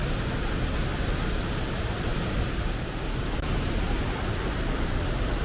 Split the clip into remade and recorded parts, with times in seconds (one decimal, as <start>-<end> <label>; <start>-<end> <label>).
0.0-5.4 recorded